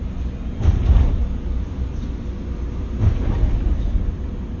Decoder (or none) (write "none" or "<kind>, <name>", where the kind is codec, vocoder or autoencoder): none